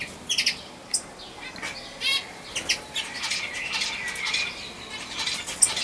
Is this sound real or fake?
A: real